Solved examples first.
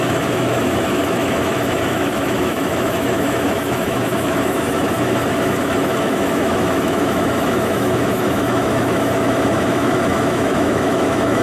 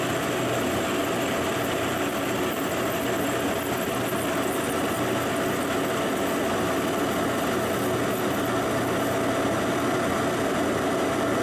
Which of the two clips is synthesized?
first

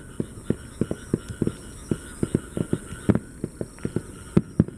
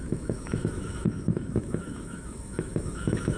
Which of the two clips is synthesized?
second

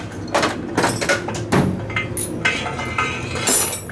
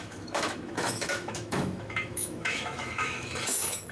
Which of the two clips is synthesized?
second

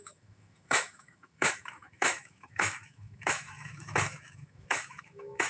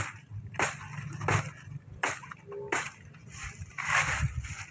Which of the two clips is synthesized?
first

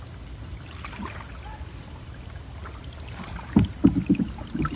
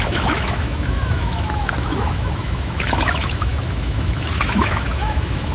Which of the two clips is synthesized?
second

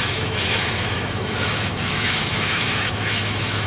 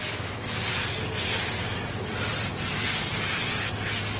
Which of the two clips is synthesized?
first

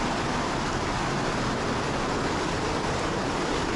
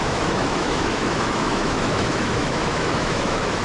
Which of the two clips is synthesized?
second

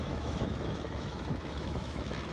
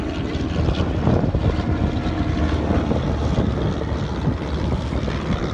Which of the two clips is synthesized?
first